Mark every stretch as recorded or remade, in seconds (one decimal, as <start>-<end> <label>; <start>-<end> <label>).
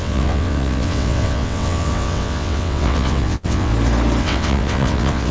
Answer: 0.0-3.7 remade; 3.7-4.2 recorded; 4.2-5.3 remade